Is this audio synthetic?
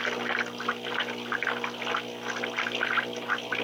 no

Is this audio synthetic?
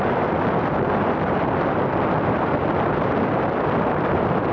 yes